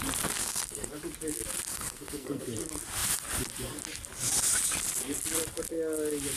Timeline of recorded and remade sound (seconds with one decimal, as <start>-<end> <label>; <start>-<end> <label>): 0.0-0.4 recorded; 0.4-0.9 remade; 0.9-1.7 recorded; 1.7-2.4 remade; 2.4-6.4 recorded